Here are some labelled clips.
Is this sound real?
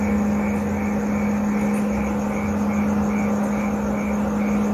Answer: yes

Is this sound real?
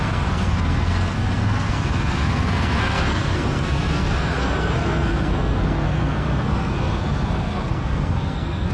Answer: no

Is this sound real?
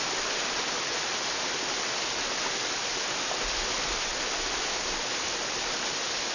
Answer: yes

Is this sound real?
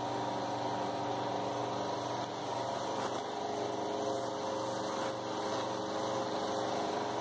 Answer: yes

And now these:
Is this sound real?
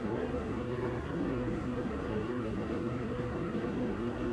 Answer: no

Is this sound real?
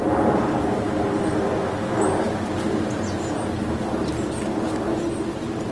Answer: yes